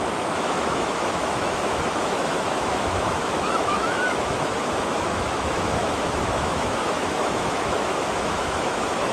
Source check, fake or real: fake